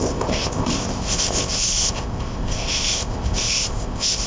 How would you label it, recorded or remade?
remade